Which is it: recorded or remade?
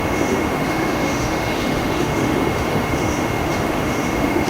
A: remade